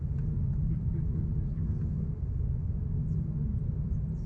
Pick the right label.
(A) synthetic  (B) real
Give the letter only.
B